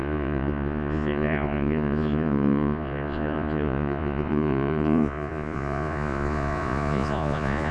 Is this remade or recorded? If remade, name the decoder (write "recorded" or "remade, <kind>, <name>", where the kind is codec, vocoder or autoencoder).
remade, vocoder, Vocos